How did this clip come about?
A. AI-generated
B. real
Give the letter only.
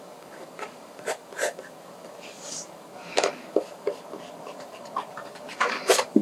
A